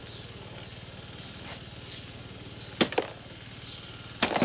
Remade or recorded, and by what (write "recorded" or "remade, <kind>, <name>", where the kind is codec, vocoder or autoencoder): recorded